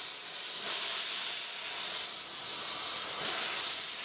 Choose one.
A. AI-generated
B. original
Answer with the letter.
B